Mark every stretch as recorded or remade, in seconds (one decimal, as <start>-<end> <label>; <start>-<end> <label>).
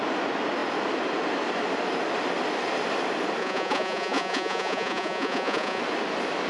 0.0-3.4 recorded; 3.4-5.8 remade; 5.8-6.5 recorded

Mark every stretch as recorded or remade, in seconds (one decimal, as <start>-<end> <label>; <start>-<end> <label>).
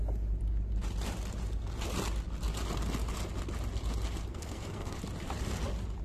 0.0-4.3 recorded; 4.3-5.0 remade; 5.0-6.0 recorded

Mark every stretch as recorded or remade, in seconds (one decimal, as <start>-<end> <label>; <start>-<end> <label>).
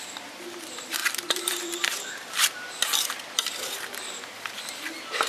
0.0-1.0 recorded; 1.0-4.2 remade; 4.2-5.3 recorded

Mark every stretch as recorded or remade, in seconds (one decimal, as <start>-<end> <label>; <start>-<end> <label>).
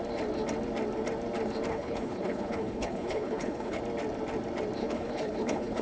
0.0-1.7 recorded; 1.7-3.8 remade; 3.8-4.8 recorded; 4.8-5.8 remade